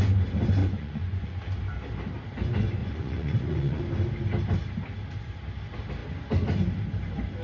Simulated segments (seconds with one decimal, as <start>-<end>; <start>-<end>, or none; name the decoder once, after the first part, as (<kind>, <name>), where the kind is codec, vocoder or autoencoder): 0.6-1.4 (vocoder, Vocos); 2.8-3.8